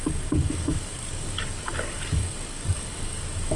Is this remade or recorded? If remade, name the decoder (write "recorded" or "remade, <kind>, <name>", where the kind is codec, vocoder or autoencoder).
remade, codec, DAC